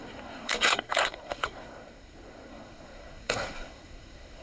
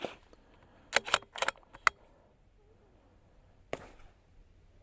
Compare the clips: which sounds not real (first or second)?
first